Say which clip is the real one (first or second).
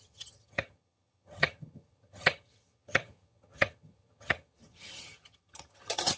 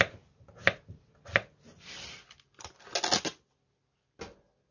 second